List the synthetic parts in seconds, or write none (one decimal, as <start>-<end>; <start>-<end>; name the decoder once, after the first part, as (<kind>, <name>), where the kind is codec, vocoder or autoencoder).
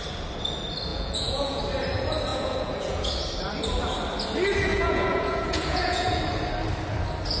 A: 0.9-1.6 (vocoder, Vocos); 2.3-3.1; 4.7-6.2